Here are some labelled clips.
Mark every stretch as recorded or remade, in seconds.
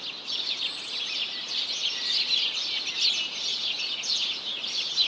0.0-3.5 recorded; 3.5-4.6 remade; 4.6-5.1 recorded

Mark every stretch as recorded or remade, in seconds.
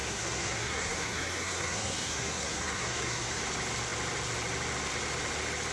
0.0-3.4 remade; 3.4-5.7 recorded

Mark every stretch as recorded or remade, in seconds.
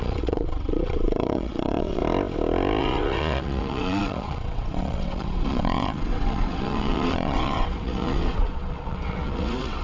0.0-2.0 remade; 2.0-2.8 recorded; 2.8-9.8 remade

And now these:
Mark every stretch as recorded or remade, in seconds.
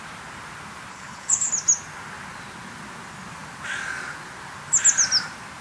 0.0-0.9 recorded; 0.9-1.5 remade; 1.5-5.6 recorded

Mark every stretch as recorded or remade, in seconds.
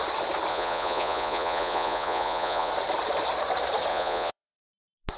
0.0-0.5 recorded; 0.5-2.7 remade; 2.7-3.9 recorded; 3.9-4.6 remade; 4.6-5.2 recorded